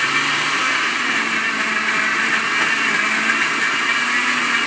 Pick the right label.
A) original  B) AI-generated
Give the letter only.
A